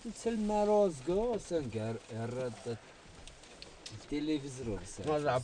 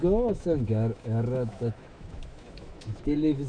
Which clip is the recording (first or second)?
first